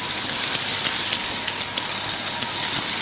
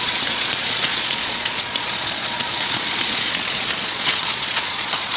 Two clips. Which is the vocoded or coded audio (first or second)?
second